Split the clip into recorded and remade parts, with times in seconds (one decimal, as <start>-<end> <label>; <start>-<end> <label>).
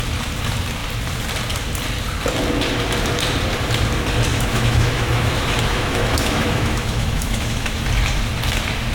0.0-4.3 recorded; 4.3-7.8 remade; 7.8-8.9 recorded